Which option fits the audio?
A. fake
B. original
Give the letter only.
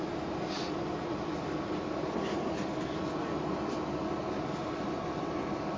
B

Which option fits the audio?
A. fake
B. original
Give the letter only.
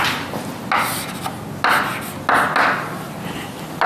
B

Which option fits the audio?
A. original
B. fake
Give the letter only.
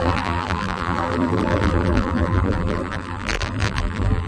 B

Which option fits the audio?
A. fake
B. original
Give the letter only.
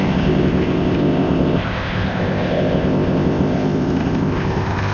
A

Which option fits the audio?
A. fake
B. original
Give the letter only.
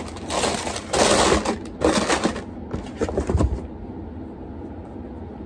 B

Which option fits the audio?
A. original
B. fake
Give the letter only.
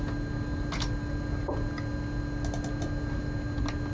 A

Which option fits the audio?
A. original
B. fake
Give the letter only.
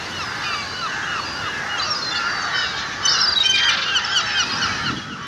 A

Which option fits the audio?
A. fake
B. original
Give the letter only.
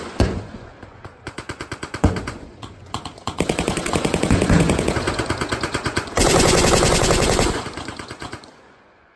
A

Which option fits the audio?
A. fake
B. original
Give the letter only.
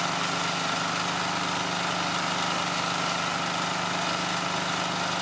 B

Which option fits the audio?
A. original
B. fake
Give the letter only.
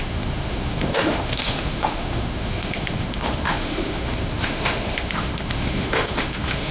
B